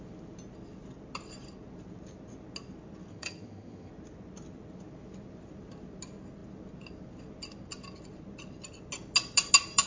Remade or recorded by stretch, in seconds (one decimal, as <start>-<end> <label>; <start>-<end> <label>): 0.0-3.1 recorded; 3.1-3.9 remade; 3.9-9.9 recorded